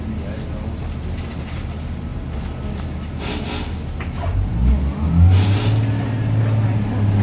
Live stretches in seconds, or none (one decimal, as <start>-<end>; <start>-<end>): 0.0-7.2